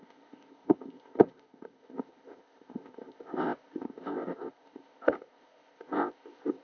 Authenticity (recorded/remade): remade